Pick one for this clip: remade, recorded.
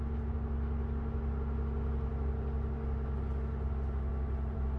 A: recorded